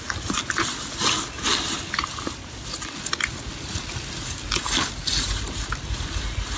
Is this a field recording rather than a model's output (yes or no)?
yes